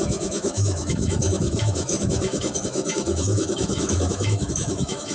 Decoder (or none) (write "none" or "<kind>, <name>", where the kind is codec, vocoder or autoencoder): autoencoder, DAC-VAE